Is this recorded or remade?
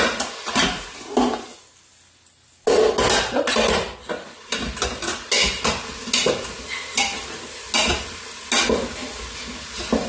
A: recorded